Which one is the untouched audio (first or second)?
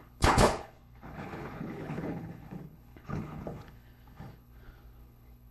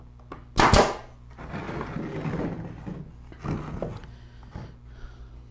second